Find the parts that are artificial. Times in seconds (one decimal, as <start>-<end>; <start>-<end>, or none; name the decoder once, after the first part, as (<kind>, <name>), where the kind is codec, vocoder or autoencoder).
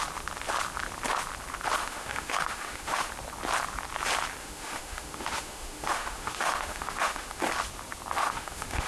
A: 1.8-3.1 (autoencoder, DAC-VAE); 4.4-7.4; 8.2-8.9